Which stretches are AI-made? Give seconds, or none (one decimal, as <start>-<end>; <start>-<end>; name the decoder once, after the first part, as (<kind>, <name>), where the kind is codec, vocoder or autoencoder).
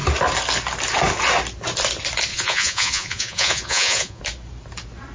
2.3-4.2 (vocoder, Vocos)